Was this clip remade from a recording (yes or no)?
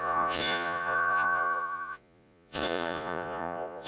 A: yes